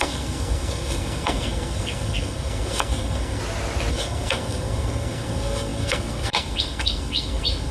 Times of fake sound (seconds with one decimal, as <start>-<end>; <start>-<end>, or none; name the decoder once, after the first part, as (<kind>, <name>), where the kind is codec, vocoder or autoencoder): 0.0-3.4 (codec, SNAC); 3.9-7.7